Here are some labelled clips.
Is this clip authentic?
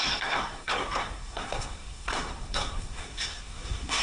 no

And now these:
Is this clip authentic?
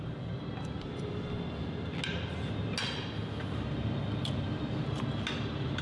yes